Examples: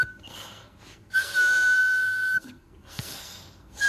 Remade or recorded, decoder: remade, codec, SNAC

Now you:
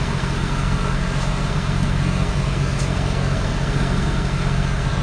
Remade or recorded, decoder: remade, codec, SNAC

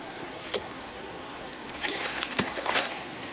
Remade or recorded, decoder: remade, codec, SNAC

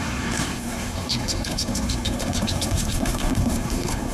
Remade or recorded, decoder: remade, codec, SNAC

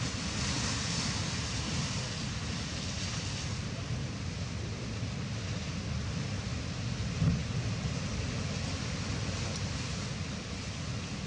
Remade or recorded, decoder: recorded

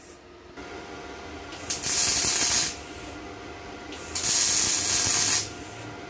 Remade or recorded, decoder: recorded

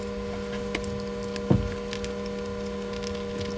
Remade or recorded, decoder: recorded